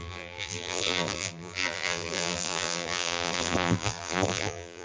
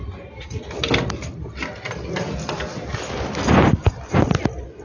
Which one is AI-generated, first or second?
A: first